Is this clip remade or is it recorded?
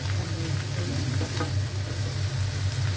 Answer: recorded